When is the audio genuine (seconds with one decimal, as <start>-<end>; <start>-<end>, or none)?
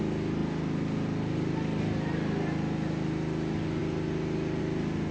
0.0-5.1